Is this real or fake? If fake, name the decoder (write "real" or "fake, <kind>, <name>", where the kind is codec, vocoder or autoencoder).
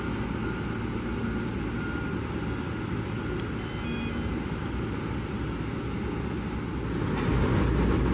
real